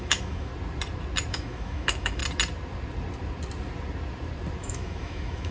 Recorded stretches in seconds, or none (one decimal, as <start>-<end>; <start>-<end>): 0.5-1.3; 2.2-4.6